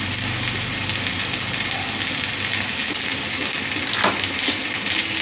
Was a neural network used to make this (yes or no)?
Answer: no